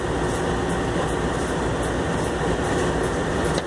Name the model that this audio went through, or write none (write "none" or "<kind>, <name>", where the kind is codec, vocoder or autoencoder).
none